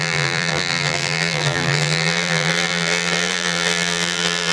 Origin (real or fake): fake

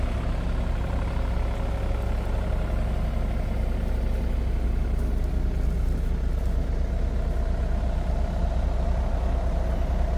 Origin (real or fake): real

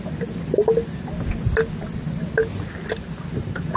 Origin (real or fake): real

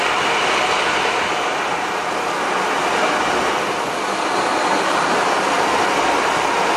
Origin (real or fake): real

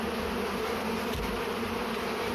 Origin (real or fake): real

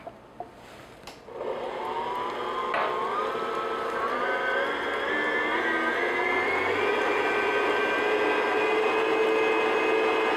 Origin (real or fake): real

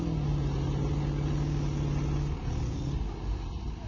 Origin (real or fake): real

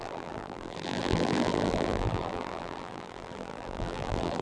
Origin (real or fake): fake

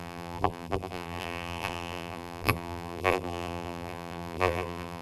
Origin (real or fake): fake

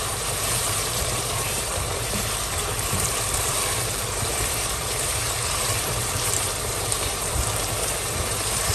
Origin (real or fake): fake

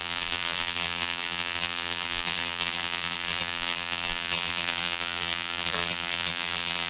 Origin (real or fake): fake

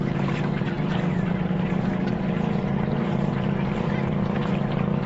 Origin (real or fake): real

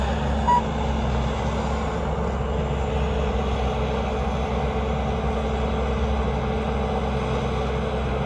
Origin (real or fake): real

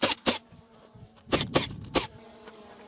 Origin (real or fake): fake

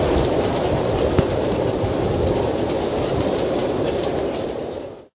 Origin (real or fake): fake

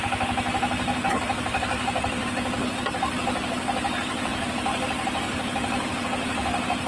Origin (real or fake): real